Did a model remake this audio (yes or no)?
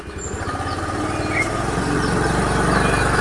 no